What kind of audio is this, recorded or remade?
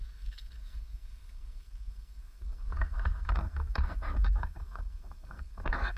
remade